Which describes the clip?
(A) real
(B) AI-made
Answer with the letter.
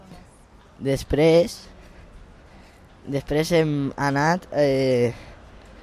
A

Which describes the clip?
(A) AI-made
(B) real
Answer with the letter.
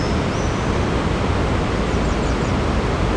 B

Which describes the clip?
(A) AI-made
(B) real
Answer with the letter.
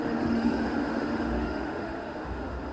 A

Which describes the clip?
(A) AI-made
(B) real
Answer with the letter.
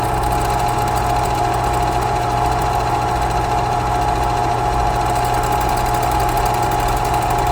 B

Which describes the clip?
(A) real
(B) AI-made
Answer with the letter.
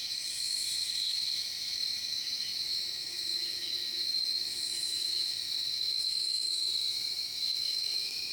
B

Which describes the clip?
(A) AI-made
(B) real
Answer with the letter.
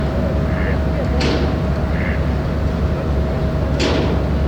B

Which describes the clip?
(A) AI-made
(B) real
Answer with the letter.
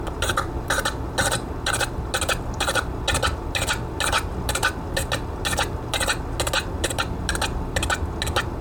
B